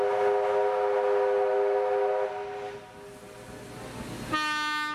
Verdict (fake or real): real